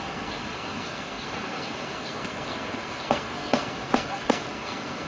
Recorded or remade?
remade